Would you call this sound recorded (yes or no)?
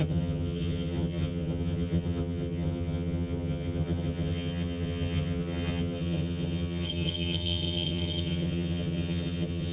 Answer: no